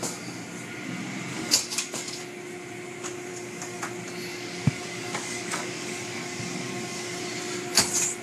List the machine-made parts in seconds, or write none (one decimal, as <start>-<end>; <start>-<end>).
1.3-2.2; 3.3-3.9; 4.3-7.2